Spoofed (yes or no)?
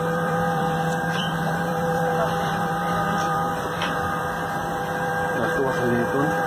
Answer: yes